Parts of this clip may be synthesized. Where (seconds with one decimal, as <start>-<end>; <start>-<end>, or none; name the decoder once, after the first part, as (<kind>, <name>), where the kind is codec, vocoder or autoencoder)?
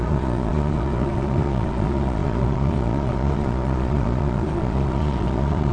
0.0-5.7 (vocoder, Vocos)